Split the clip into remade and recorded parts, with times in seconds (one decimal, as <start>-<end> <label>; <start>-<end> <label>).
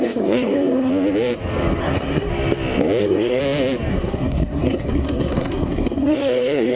0.0-0.9 remade; 0.9-1.8 recorded; 1.8-2.3 remade; 2.3-3.0 recorded; 3.0-3.4 remade; 3.4-3.9 recorded; 3.9-6.8 remade